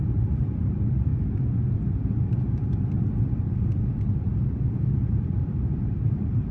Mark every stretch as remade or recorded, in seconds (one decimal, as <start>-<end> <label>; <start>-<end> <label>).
0.0-1.1 remade; 1.1-3.4 recorded; 3.4-6.5 remade

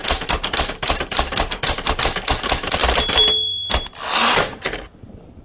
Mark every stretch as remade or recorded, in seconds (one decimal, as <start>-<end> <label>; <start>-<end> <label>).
0.0-1.7 remade; 1.7-4.2 recorded; 4.2-4.8 remade; 4.8-5.4 recorded

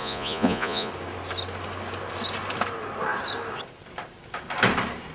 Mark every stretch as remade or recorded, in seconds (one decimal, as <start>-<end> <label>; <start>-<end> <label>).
0.0-0.9 remade; 0.9-5.1 recorded